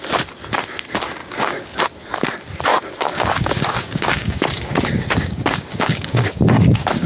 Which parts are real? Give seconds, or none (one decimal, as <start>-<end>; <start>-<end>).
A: 0.0-1.2; 1.8-2.7

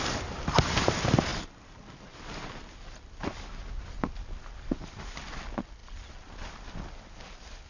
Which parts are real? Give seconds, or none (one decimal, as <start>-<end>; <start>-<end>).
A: 0.0-7.7

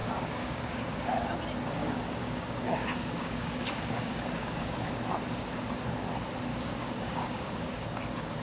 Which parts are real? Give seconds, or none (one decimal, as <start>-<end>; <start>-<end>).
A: 0.9-1.8; 4.9-6.5; 8.0-8.4

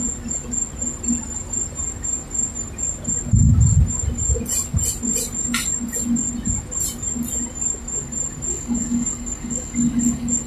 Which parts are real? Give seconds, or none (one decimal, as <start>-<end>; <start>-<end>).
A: 0.0-8.5

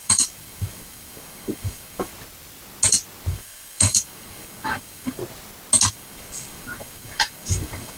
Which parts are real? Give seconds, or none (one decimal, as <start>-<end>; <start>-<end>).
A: 2.1-3.3; 5.2-5.9